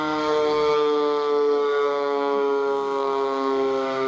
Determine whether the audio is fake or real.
fake